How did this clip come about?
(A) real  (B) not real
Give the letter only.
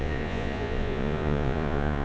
B